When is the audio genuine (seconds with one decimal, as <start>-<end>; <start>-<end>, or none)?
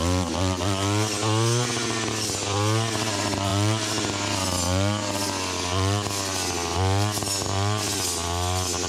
0.0-8.9